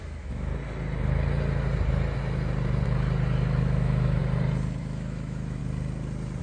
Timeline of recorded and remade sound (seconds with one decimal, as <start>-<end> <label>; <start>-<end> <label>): 0.0-0.5 remade; 0.5-3.6 recorded; 3.6-4.2 remade; 4.2-4.8 recorded; 4.8-5.6 remade; 5.6-6.4 recorded